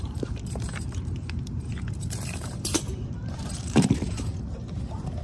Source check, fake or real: fake